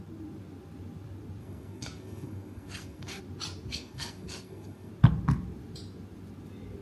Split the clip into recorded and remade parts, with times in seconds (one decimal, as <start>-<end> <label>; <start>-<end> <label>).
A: 0.0-1.4 recorded; 1.4-3.2 remade; 3.2-3.7 recorded; 3.7-4.9 remade; 4.9-6.8 recorded